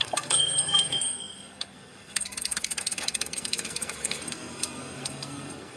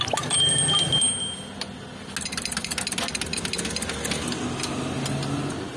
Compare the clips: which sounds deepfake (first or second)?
first